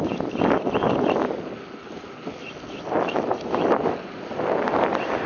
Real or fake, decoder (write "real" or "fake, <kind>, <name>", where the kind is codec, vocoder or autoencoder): real